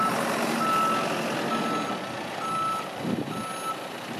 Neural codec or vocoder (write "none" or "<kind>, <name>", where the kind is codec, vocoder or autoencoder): none